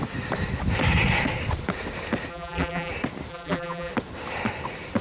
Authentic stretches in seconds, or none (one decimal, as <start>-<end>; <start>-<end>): 0.0-2.3; 2.9-3.3; 3.9-5.0